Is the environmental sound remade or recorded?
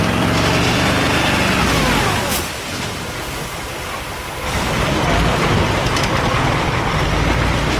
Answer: recorded